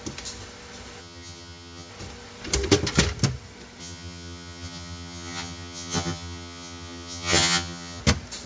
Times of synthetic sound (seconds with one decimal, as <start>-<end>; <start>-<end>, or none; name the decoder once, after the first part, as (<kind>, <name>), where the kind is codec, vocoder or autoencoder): 1.0-1.9 (vocoder, HiFi-GAN); 3.8-8.0